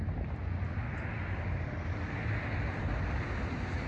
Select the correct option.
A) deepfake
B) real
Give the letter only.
B